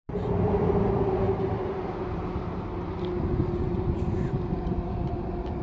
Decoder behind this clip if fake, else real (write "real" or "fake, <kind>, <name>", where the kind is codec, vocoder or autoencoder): real